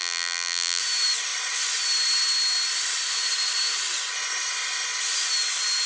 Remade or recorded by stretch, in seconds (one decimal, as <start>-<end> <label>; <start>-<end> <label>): 0.0-0.8 remade; 0.8-5.9 recorded